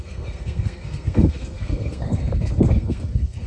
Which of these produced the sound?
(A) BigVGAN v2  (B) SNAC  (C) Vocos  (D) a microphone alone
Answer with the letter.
B